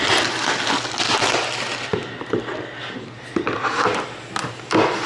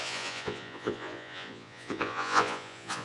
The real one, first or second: first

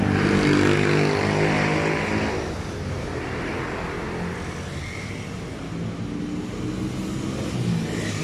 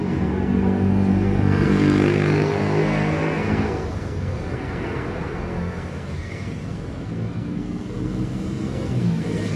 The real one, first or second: first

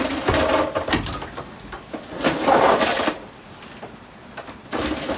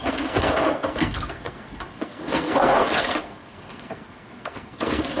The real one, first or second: first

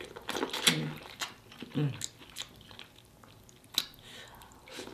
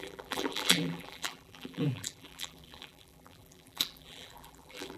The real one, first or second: first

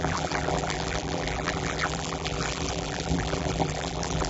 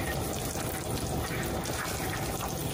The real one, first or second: second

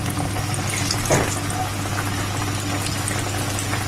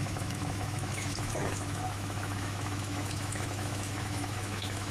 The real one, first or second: first